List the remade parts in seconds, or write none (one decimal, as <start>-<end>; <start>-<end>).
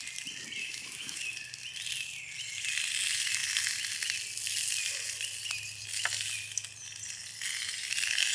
0.6-1.2